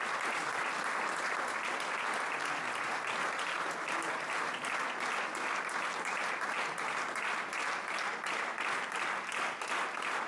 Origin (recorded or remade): recorded